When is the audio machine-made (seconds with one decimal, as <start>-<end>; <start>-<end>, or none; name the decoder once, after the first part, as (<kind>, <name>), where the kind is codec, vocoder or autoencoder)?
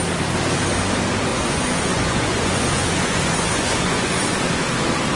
1.3-4.4 (vocoder, Vocos)